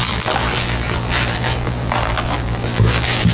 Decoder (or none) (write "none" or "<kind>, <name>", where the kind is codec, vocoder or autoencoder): vocoder, BigVGAN v2